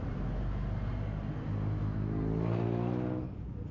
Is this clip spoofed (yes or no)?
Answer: no